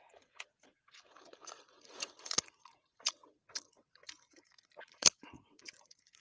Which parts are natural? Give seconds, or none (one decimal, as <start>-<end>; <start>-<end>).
none